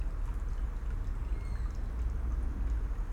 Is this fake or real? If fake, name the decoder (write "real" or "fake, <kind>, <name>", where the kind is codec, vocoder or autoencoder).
real